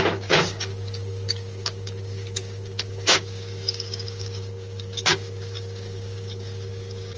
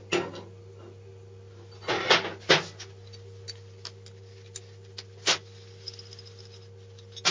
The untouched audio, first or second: second